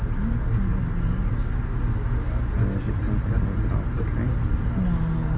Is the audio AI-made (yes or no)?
no